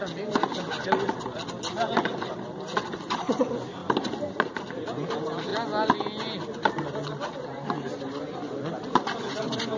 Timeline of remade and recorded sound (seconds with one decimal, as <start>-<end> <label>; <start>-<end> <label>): 0.0-3.8 recorded; 3.8-4.6 remade; 4.6-9.8 recorded